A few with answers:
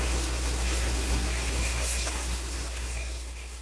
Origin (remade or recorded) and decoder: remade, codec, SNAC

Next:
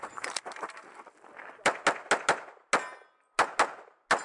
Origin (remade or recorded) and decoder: recorded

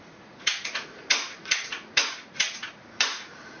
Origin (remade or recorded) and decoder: remade, vocoder, Vocos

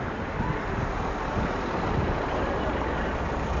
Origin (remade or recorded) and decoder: recorded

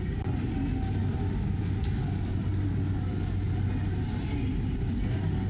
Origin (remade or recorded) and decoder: recorded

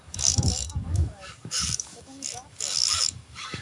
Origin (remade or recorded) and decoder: remade, codec, DAC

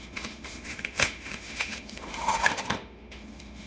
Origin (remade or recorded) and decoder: remade, autoencoder, DAC-VAE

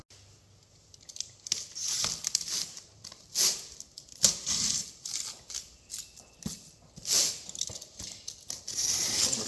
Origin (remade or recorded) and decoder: recorded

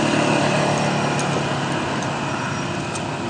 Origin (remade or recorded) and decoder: recorded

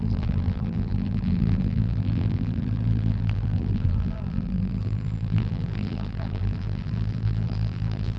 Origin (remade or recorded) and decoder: remade, vocoder, BigVGAN v2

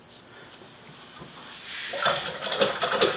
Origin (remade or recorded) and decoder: recorded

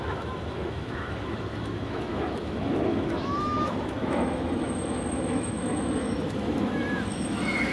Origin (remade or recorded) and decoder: remade, autoencoder, DAC-VAE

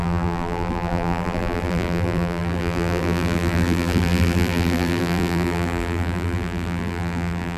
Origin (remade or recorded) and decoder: remade, vocoder, BigVGAN v2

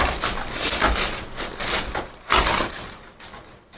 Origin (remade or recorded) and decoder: recorded